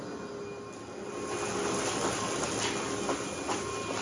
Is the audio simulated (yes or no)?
no